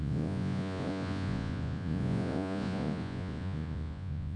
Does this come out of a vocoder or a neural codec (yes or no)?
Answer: yes